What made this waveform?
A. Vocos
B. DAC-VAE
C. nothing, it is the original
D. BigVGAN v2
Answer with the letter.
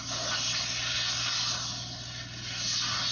C